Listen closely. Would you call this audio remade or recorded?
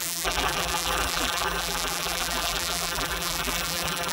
remade